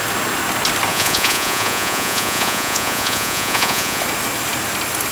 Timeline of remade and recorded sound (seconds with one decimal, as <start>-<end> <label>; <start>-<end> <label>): 0.0-0.9 recorded; 0.9-4.0 remade; 4.0-5.1 recorded

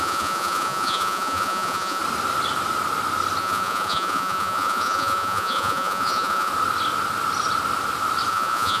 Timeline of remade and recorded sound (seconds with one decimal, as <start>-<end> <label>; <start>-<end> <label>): 0.0-2.0 remade; 2.0-3.4 recorded; 3.4-6.5 remade; 6.5-8.3 recorded; 8.3-8.8 remade

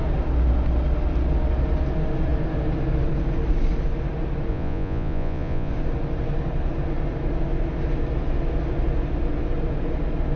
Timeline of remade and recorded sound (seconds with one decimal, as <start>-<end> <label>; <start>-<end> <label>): 0.0-4.5 recorded; 4.5-5.7 remade; 5.7-10.4 recorded

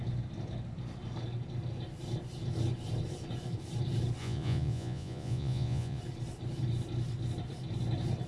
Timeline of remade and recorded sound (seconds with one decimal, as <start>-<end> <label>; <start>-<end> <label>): 0.0-4.2 recorded; 4.2-6.0 remade; 6.0-8.3 recorded